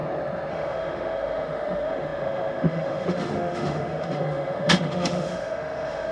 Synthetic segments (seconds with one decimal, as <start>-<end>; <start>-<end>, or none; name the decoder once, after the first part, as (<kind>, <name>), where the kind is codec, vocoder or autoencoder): 0.5-6.1 (autoencoder, DAC-VAE)